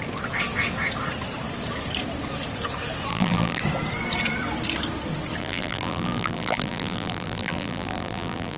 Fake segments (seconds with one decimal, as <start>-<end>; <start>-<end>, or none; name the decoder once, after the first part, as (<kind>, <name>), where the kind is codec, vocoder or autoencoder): 3.1-3.6 (vocoder, BigVGAN v2); 5.4-8.6